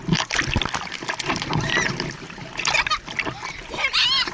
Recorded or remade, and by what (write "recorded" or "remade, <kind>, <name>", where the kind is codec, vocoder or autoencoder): recorded